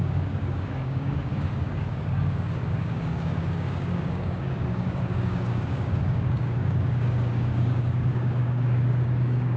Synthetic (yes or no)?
yes